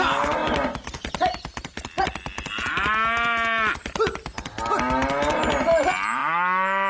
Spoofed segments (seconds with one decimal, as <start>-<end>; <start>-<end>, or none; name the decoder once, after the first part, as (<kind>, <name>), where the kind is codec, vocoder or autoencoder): none